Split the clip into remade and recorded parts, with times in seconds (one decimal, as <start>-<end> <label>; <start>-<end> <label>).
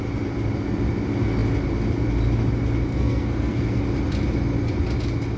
0.0-2.9 recorded; 2.9-3.8 remade; 3.8-5.4 recorded